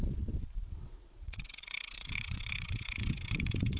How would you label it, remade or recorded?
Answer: remade